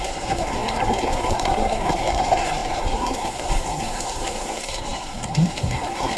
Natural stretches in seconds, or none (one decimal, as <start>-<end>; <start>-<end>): none